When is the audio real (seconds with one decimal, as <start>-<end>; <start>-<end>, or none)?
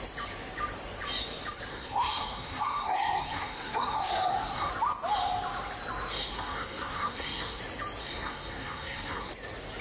0.0-1.7; 4.7-6.3; 7.6-8.0; 9.3-9.8